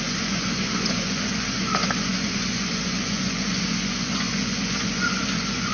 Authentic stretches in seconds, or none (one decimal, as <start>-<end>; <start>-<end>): none